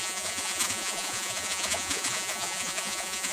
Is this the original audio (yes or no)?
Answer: no